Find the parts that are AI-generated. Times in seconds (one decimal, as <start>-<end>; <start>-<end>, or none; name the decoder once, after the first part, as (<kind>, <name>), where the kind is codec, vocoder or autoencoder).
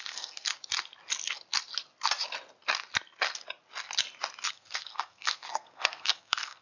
0.0-0.5 (codec, SNAC); 4.5-6.6